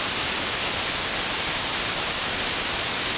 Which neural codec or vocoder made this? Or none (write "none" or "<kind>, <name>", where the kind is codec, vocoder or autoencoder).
none